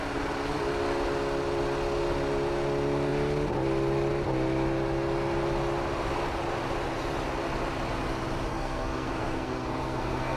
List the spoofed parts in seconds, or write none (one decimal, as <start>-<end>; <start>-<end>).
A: 8.5-10.4